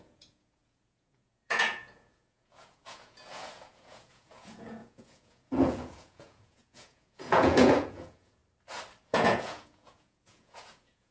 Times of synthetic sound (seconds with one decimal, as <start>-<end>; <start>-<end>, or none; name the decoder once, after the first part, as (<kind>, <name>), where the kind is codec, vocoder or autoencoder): 0.0-8.4 (vocoder, Vocos); 9.0-11.1